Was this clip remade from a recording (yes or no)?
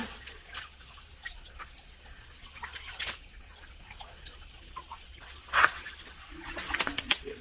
yes